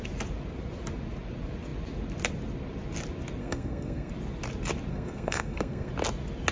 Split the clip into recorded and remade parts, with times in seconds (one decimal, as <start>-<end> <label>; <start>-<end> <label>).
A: 0.0-3.4 recorded; 3.4-4.1 remade; 4.1-4.9 recorded; 4.9-5.9 remade; 5.9-6.5 recorded